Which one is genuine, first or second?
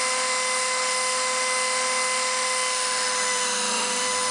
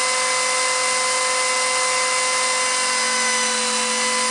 second